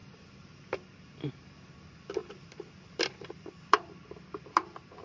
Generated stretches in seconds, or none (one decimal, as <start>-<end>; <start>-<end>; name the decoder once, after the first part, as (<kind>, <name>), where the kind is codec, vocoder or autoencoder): 0.0-1.3 (vocoder, BigVGAN v2); 2.2-4.1